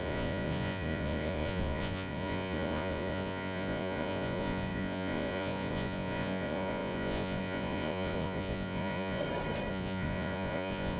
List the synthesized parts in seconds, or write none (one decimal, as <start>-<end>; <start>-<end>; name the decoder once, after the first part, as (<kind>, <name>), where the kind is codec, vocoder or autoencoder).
0.0-9.2 (vocoder, Vocos); 9.7-11.0